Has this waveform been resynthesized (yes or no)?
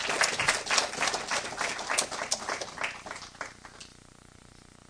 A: no